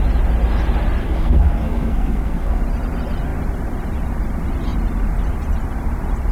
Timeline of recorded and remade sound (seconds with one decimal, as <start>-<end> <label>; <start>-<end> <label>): 0.0-1.0 recorded; 1.0-2.6 remade; 2.6-6.3 recorded